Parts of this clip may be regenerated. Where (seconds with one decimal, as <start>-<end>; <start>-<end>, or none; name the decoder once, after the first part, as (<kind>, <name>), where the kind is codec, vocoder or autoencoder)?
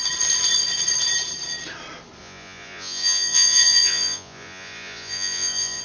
2.2-5.8 (vocoder, Vocos)